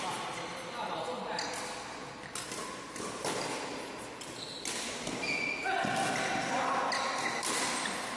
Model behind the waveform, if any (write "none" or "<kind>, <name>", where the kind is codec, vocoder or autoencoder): none